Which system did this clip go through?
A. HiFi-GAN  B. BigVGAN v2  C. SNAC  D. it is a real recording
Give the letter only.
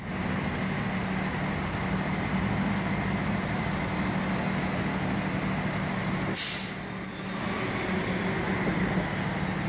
D